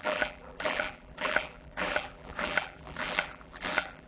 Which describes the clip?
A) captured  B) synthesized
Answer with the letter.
B